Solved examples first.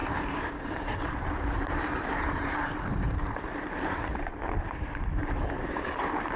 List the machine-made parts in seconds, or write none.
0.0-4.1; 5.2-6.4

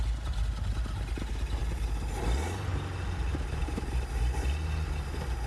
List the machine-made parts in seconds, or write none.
none

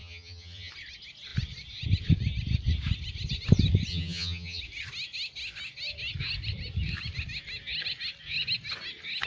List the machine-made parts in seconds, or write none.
0.0-0.7; 3.9-4.6

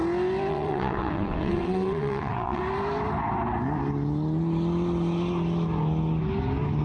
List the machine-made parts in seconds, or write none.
0.5-2.6

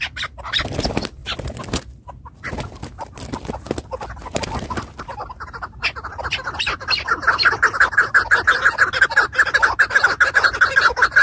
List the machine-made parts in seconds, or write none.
0.0-1.2; 5.0-11.2

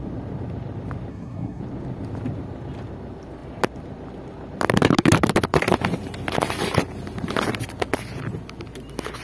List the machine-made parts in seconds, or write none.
1.1-1.6

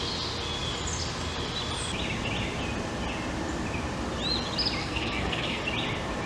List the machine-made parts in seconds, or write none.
4.8-5.6

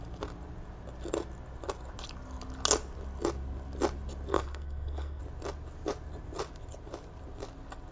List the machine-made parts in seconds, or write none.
4.3-5.2